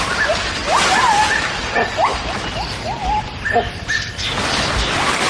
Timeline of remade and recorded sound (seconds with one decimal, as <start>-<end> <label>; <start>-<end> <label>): 0.0-5.3 recorded